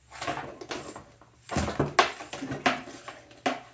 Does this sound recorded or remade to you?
recorded